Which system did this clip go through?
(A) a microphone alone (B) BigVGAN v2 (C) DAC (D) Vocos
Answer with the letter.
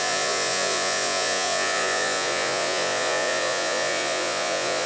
D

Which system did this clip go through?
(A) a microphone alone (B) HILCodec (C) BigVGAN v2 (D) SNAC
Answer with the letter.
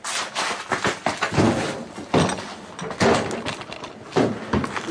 A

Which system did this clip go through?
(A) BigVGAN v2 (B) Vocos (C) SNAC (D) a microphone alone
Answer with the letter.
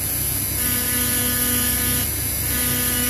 D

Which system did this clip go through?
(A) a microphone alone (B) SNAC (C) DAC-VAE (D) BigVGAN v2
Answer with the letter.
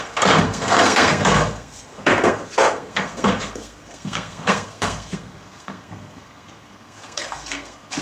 B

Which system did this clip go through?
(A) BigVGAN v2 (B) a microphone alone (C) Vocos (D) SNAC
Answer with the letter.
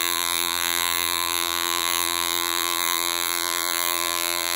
A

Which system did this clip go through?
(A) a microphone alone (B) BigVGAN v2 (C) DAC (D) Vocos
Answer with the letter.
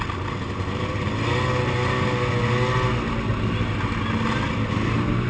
A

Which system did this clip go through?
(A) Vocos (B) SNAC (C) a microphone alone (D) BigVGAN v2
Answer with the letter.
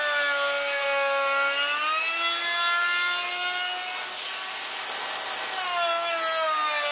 C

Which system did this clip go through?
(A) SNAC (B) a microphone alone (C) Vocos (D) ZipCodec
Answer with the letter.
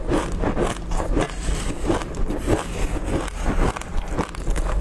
B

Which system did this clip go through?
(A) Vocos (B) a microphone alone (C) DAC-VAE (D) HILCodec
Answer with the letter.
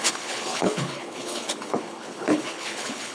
D